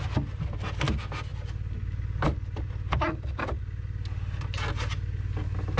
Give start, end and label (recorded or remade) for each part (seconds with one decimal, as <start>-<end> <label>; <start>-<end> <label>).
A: 0.0-5.8 recorded